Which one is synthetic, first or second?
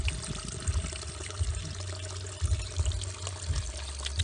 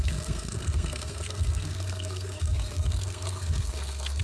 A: second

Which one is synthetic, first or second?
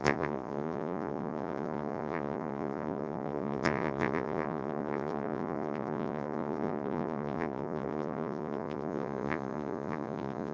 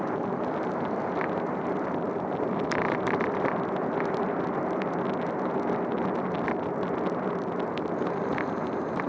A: first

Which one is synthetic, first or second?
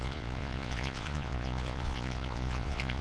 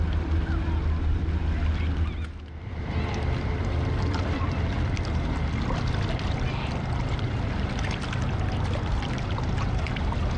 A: first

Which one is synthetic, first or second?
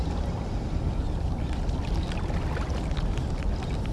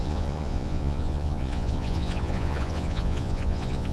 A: second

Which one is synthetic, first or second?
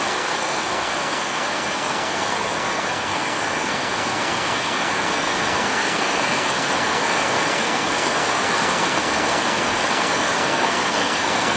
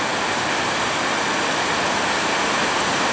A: first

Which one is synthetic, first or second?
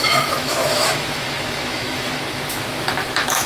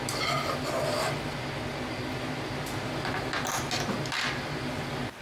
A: first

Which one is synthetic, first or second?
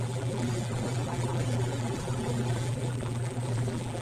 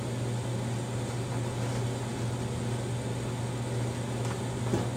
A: first